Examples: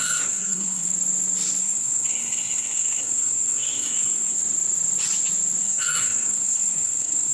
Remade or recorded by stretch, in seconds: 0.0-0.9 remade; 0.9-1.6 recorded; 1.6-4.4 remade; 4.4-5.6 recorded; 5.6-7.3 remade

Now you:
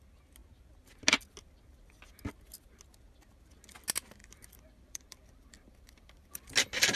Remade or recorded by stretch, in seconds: 0.0-4.2 recorded; 4.2-6.5 remade; 6.5-7.0 recorded

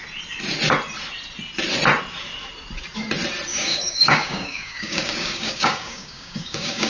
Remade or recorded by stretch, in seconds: 0.0-3.5 recorded; 3.5-6.9 remade

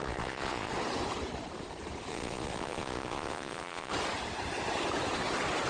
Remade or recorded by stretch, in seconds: 0.0-0.7 remade; 0.7-2.1 recorded; 2.1-3.9 remade; 3.9-5.7 recorded